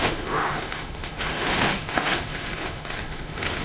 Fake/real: fake